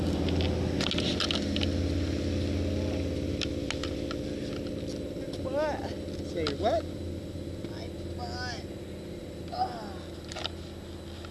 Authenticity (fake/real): real